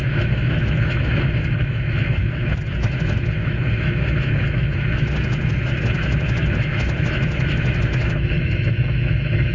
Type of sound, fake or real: fake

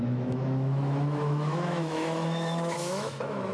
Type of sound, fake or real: fake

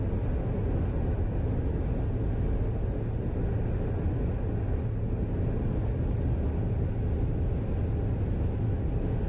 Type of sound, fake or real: real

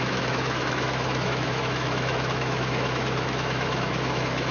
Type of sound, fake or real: fake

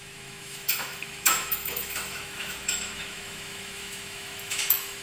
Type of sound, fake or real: fake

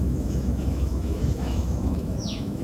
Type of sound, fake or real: fake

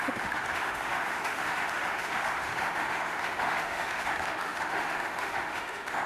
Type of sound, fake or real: fake